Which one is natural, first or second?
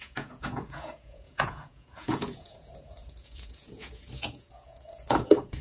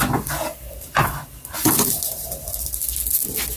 second